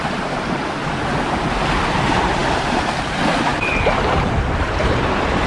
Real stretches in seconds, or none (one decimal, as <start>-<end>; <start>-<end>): 0.8-1.4